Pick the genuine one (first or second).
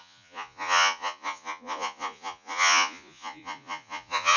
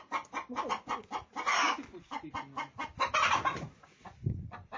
second